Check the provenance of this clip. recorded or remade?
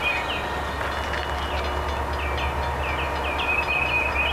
recorded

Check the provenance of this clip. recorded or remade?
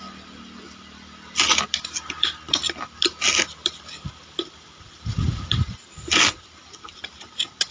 remade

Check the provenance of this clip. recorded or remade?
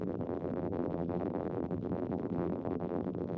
remade